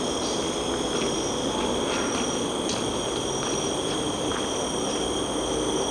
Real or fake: real